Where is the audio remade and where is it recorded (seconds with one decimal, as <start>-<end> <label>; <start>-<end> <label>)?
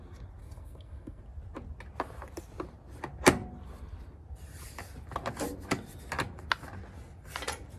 0.0-0.4 recorded; 0.4-1.2 remade; 1.2-7.8 recorded